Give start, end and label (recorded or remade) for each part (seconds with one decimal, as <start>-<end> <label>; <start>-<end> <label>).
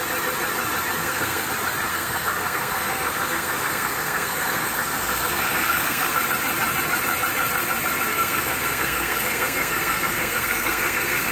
0.0-1.0 recorded; 1.0-1.5 remade; 1.5-1.9 recorded; 1.9-6.2 remade; 6.2-8.1 recorded; 8.1-11.3 remade